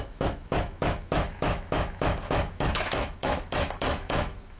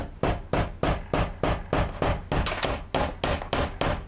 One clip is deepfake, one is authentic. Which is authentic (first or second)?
second